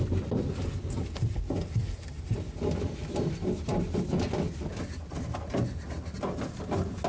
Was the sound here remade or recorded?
recorded